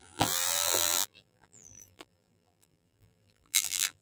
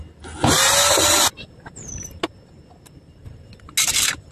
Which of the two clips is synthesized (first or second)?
first